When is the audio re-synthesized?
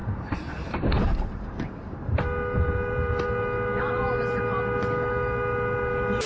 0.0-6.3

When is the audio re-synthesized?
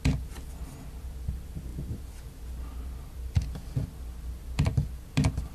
none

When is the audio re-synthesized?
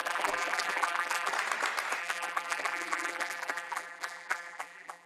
0.0-1.3; 2.0-5.1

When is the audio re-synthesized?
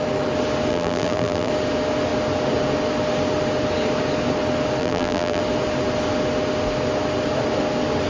0.7-1.5; 4.8-5.4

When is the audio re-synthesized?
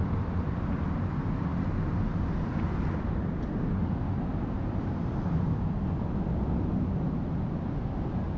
none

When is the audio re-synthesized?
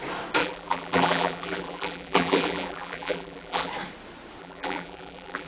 0.4-3.7; 4.4-5.5